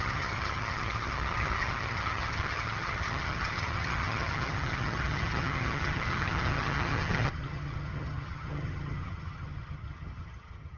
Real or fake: fake